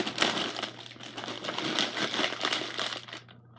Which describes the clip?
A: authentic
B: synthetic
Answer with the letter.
A